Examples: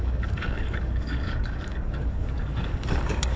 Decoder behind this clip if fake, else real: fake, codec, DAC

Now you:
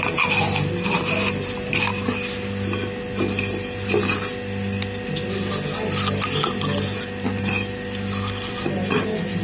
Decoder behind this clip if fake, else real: real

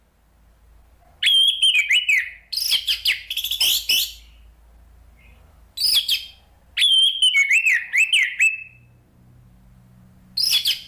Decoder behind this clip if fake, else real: real